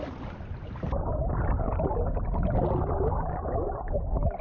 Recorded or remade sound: recorded